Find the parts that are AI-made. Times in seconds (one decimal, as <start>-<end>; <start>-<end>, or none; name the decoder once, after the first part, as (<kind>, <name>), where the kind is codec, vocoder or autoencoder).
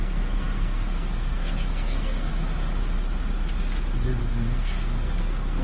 0.0-2.3 (codec, SNAC); 4.2-5.6